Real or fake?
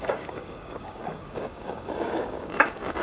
fake